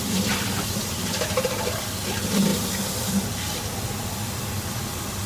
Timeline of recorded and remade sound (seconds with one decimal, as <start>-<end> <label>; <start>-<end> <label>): 0.0-5.3 recorded